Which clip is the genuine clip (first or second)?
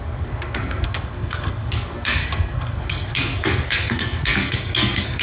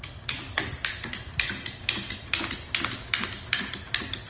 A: second